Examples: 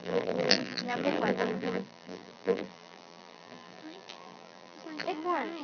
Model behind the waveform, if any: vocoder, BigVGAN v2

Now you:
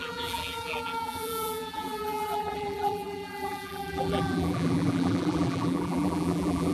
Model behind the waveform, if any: vocoder, BigVGAN v2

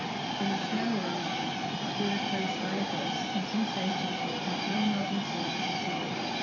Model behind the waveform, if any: vocoder, BigVGAN v2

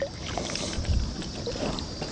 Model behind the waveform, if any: none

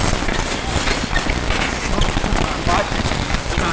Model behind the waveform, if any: none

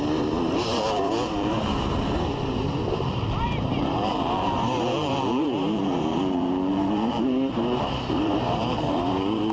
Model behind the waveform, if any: vocoder, BigVGAN v2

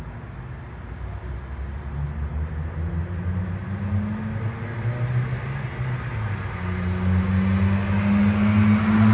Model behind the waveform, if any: none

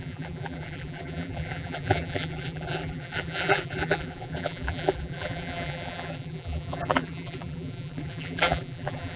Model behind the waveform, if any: vocoder, BigVGAN v2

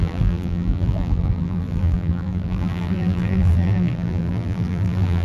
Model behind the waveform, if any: vocoder, BigVGAN v2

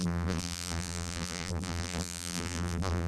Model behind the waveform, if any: vocoder, BigVGAN v2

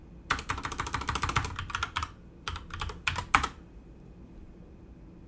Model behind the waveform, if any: vocoder, BigVGAN v2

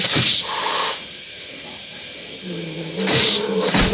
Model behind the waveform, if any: vocoder, BigVGAN v2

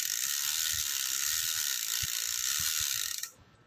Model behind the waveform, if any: none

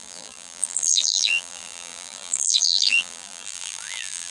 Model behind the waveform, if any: vocoder, BigVGAN v2